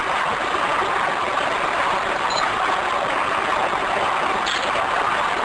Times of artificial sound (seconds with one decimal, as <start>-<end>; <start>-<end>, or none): none